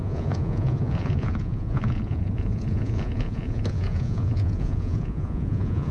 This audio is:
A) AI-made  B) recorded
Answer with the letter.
A